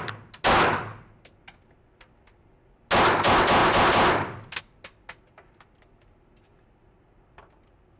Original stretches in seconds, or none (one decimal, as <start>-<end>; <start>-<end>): 0.0-3.6; 4.6-8.0